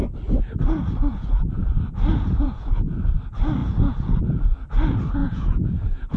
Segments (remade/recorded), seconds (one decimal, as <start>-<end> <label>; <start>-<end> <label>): 0.0-1.1 recorded; 1.1-1.6 remade; 1.6-2.1 recorded; 2.1-3.0 remade; 3.0-3.6 recorded; 3.6-4.2 remade; 4.2-5.2 recorded; 5.2-6.2 remade